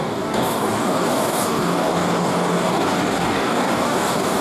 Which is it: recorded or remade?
remade